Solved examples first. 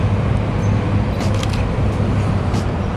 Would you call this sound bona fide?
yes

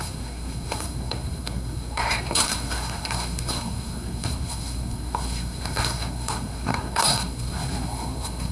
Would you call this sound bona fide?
no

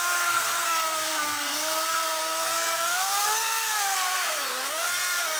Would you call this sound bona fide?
no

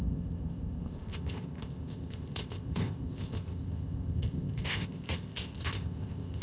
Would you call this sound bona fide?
no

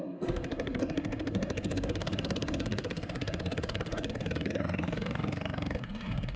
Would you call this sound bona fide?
no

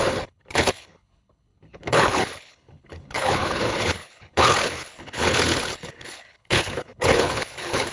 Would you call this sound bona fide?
no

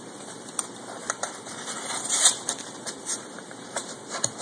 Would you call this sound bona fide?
no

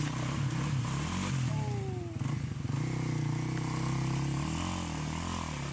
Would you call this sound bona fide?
yes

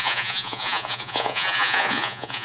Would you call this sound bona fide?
no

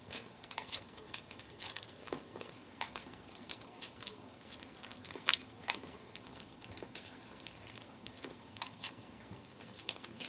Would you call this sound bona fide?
no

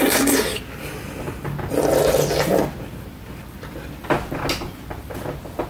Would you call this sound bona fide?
yes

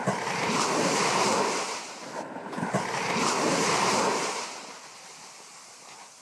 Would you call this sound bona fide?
yes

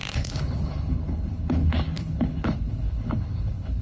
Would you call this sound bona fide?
no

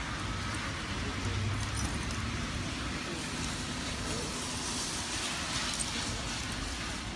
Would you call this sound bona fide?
yes